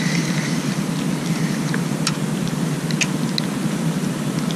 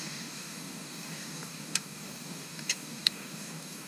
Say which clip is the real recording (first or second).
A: first